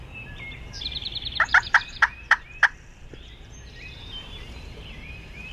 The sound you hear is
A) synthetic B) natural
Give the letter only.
A